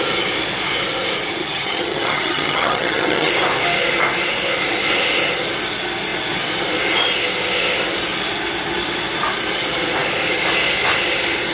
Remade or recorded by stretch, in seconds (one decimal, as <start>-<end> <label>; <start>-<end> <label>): 0.0-1.4 recorded; 1.4-3.3 remade; 3.3-11.5 recorded